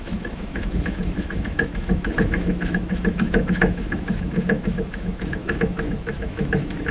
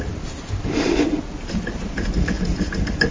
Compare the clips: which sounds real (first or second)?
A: second